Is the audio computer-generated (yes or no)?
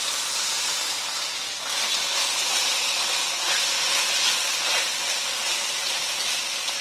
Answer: no